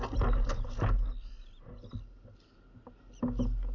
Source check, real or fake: real